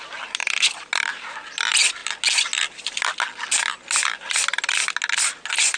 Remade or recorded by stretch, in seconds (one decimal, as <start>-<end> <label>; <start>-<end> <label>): 0.0-5.8 recorded

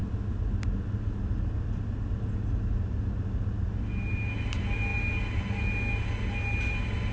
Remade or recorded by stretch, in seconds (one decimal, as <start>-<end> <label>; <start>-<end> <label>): 0.0-7.1 recorded

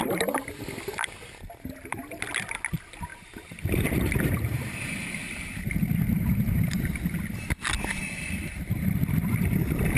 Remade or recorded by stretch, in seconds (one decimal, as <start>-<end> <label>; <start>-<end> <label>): 0.0-3.1 recorded; 3.1-6.9 remade; 6.9-10.0 recorded

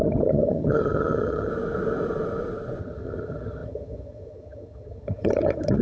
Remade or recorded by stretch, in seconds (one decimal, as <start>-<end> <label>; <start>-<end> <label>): 0.0-1.5 remade; 1.5-2.8 recorded; 2.8-5.8 remade

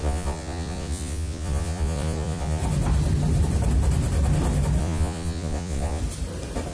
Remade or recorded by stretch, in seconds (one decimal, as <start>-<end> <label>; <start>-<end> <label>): 0.0-2.6 remade; 2.6-4.8 recorded; 4.8-6.0 remade; 6.0-6.7 recorded

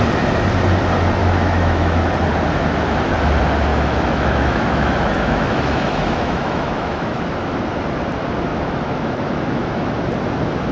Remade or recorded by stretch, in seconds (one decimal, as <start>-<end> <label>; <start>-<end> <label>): 0.0-1.2 recorded; 1.2-2.1 remade; 2.1-3.7 recorded; 3.7-7.2 remade; 7.2-8.5 recorded; 8.5-10.0 remade; 10.0-10.7 recorded